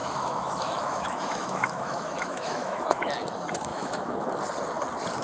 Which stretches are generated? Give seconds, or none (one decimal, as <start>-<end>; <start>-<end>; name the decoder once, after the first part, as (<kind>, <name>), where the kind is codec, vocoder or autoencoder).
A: 0.0-3.1 (autoencoder, DAC-VAE); 3.7-4.3